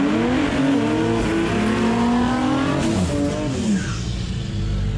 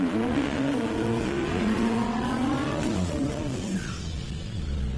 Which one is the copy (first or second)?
second